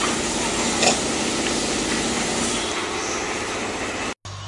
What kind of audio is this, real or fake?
real